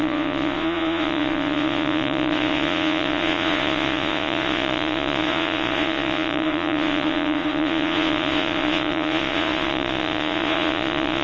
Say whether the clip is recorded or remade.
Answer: remade